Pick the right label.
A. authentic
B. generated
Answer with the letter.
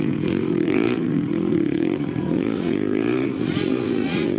B